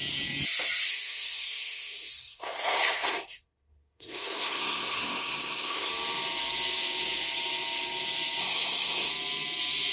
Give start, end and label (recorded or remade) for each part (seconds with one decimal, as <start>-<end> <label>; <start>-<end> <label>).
0.0-0.9 recorded; 0.9-5.9 remade; 5.9-8.4 recorded; 8.4-9.1 remade; 9.1-9.9 recorded